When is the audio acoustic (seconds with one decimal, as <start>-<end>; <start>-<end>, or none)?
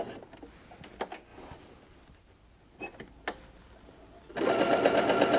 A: 0.0-5.4